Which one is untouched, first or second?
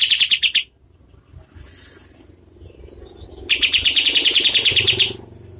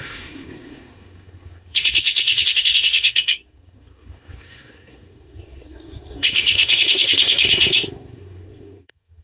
first